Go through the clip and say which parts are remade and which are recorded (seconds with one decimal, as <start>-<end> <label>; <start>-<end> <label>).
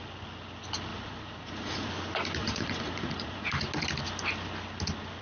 0.0-0.9 recorded; 0.9-1.9 remade; 1.9-2.4 recorded; 2.4-3.5 remade; 3.5-5.2 recorded